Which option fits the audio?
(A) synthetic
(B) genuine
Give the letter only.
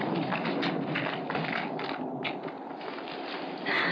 B